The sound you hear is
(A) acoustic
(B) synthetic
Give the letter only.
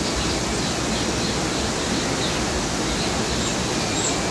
A